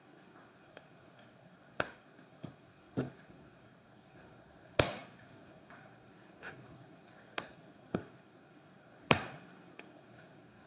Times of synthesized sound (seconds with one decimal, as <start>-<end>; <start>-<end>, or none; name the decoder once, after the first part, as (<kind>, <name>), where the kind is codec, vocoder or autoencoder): 0.0-10.7 (codec, SNAC)